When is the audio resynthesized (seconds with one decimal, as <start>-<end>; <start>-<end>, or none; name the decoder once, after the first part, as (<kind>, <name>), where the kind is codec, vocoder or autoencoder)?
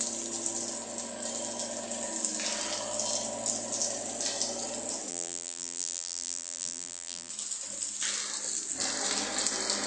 5.1-7.3 (vocoder, BigVGAN v2)